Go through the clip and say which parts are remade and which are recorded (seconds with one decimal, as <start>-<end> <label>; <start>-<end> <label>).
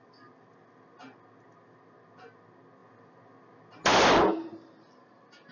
0.0-5.5 recorded